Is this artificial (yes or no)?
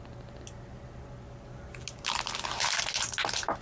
no